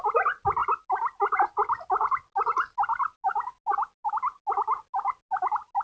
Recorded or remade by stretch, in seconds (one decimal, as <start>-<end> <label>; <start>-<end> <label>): 0.0-5.8 recorded